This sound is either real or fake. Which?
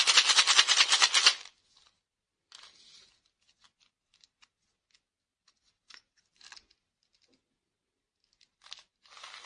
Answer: real